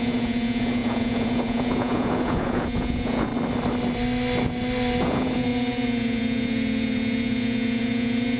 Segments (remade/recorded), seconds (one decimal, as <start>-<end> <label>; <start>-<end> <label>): 0.0-3.3 remade; 3.3-5.0 recorded; 5.0-8.4 remade